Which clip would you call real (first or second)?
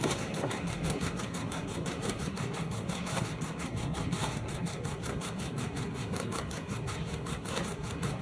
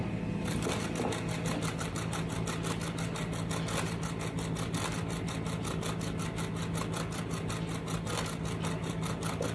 second